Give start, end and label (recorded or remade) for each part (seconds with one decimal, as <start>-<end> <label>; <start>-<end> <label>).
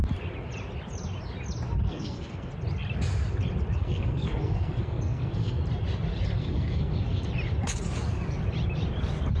0.0-1.9 recorded; 1.9-2.5 remade; 2.5-3.8 recorded; 3.8-5.6 remade; 5.6-6.4 recorded; 6.4-7.3 remade; 7.3-9.4 recorded